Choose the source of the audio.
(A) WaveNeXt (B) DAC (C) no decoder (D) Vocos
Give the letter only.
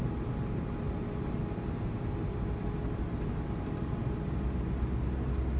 C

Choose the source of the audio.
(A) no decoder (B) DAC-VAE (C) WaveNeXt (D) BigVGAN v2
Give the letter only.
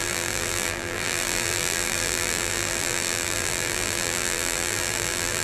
D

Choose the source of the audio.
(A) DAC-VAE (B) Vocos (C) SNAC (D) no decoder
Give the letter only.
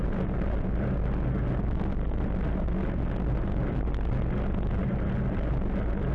D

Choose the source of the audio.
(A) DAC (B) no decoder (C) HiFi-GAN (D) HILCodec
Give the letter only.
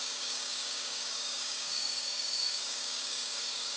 A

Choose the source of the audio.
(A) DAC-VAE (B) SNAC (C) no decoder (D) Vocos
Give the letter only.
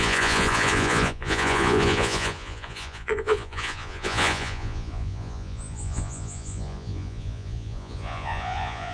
D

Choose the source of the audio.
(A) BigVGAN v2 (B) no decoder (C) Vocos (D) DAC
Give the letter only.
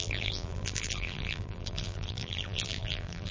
A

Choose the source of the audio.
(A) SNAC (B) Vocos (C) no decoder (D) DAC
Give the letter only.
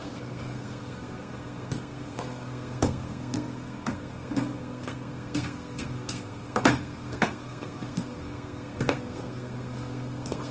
A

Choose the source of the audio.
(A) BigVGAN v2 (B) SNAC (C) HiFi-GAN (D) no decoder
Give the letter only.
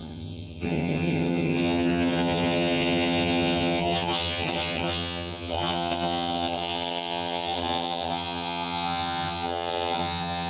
C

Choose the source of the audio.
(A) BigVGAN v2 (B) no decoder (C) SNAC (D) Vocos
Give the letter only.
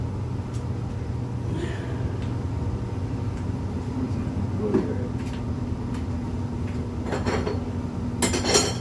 B